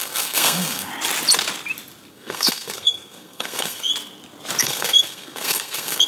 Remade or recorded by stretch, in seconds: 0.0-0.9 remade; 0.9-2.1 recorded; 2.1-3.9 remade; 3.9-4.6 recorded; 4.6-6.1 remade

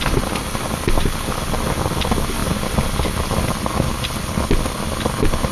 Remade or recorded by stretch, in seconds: 0.0-5.5 recorded

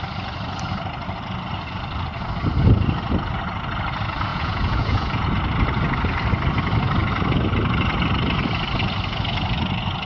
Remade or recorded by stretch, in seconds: 0.0-4.3 recorded; 4.3-5.3 remade; 5.3-10.1 recorded

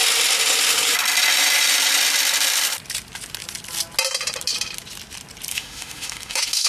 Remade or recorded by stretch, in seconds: 0.0-5.5 recorded; 5.5-6.7 remade

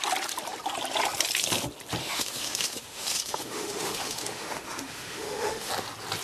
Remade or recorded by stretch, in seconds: 0.0-2.0 recorded; 2.0-5.7 remade; 5.7-6.2 recorded

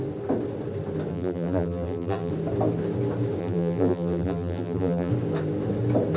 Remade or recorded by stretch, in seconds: 0.0-1.1 recorded; 1.1-2.3 remade; 2.3-3.4 recorded; 3.4-5.1 remade; 5.1-6.2 recorded

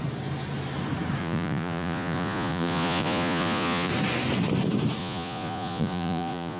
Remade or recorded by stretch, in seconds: 0.0-1.2 recorded; 1.2-3.9 remade; 3.9-5.0 recorded; 5.0-6.6 remade

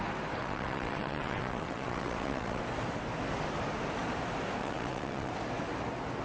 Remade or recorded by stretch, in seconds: 0.0-0.4 recorded; 0.4-2.6 remade; 2.6-4.6 recorded; 4.6-5.3 remade; 5.3-6.2 recorded